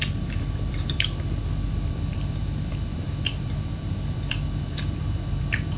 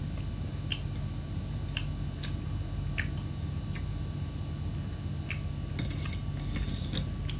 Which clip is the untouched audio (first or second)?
second